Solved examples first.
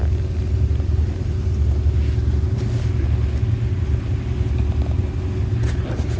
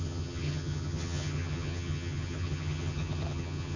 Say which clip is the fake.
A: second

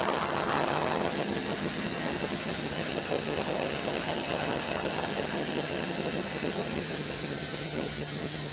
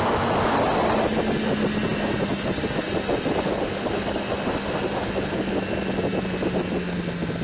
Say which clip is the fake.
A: first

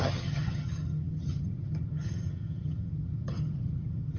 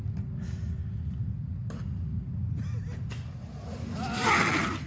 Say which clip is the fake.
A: first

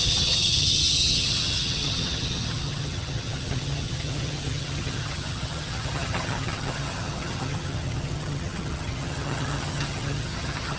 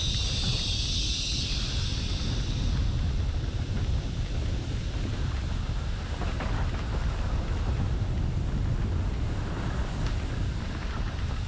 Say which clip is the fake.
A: first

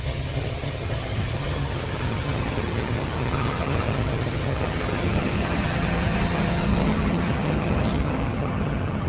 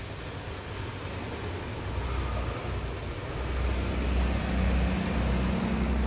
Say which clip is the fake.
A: first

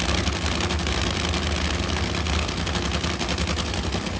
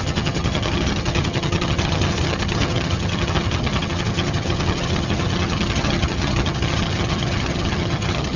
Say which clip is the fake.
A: second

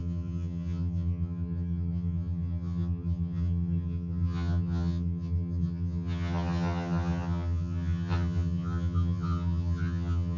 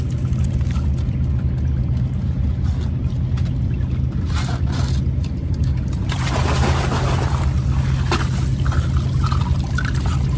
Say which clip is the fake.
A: first